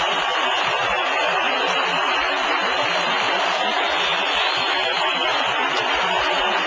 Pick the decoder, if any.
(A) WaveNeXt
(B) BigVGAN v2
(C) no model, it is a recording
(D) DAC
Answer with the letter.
C